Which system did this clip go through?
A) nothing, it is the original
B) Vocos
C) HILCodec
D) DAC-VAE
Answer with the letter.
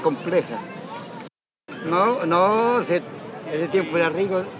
A